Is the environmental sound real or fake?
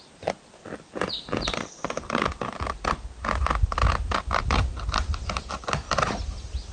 real